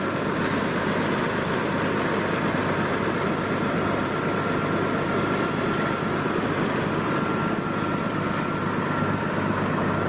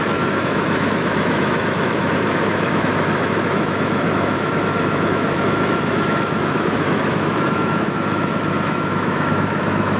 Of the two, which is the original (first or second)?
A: first